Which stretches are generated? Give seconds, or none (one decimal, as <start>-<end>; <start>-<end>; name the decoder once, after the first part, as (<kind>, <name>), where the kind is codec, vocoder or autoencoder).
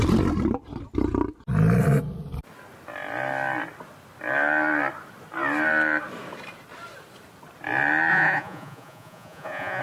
8.1-9.8 (vocoder, Vocos)